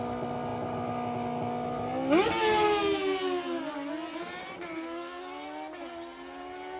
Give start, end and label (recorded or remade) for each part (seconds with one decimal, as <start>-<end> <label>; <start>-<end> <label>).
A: 0.0-6.8 recorded